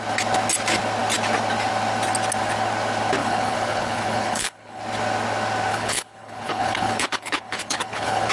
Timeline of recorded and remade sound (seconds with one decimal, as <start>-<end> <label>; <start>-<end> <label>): 0.0-3.2 recorded; 3.2-4.8 remade; 4.8-5.7 recorded; 5.7-8.3 remade